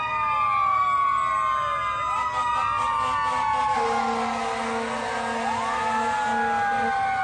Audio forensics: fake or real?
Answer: real